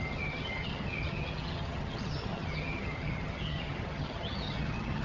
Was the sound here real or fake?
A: fake